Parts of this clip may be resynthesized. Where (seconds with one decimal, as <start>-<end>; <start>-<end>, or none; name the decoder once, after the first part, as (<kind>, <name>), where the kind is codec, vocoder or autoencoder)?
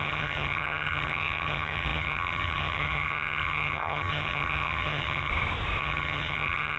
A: 0.0-5.3 (vocoder, HiFi-GAN); 5.8-6.8